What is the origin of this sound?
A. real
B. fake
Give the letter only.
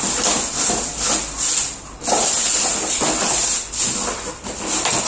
A